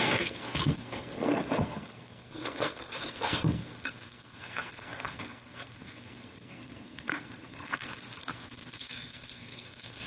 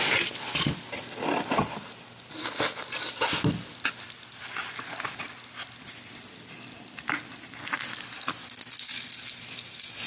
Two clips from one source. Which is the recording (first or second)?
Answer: second